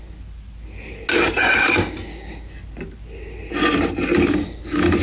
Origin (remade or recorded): recorded